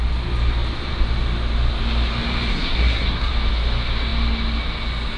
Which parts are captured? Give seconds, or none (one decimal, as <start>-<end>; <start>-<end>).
0.0-2.5; 3.3-5.2